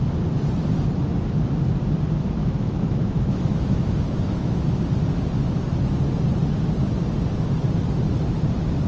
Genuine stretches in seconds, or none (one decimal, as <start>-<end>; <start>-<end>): 0.0-2.4; 4.8-8.9